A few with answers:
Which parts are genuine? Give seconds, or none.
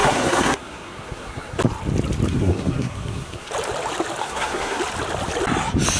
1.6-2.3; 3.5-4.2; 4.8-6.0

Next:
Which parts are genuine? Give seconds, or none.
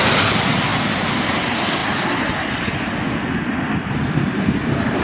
0.0-5.0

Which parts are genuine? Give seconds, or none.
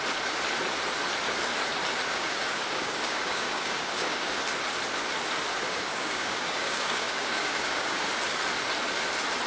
0.0-2.1; 4.4-5.5; 8.1-9.5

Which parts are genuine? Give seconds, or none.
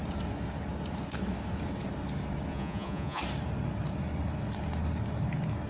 0.0-2.5; 3.2-5.7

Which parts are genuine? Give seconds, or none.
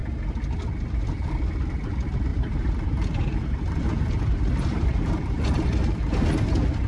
0.0-2.3; 6.1-6.9